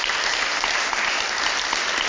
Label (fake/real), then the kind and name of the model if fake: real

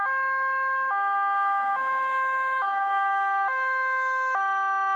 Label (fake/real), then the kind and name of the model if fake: fake, autoencoder, DAC-VAE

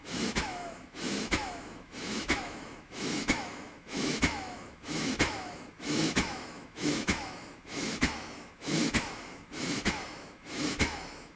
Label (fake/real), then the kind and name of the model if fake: fake, autoencoder, DAC-VAE